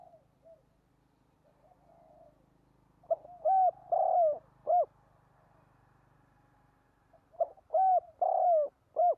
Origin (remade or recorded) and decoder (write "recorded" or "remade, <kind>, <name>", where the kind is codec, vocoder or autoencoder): recorded